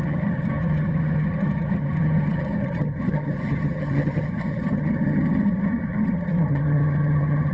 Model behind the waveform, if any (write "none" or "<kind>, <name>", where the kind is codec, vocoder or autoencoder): vocoder, HiFi-GAN